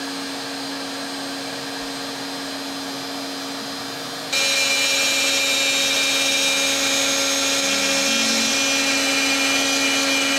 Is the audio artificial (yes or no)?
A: no